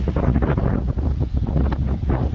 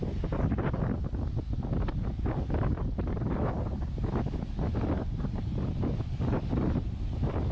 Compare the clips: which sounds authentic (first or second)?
second